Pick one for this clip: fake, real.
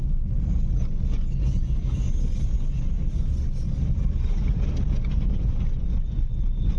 real